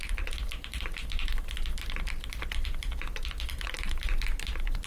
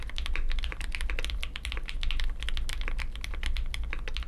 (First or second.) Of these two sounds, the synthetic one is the first